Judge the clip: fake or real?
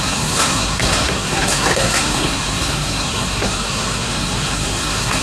fake